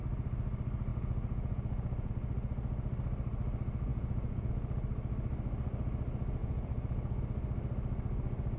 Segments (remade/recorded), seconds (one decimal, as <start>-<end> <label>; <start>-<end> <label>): 0.0-0.9 recorded; 0.9-2.1 remade; 2.1-3.9 recorded; 3.9-4.5 remade; 4.5-6.4 recorded; 6.4-7.2 remade; 7.2-8.6 recorded